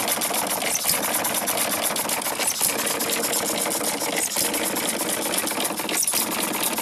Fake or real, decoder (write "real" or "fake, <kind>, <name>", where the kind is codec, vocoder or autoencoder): real